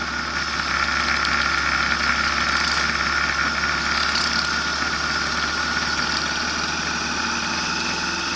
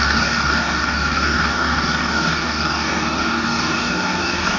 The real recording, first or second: first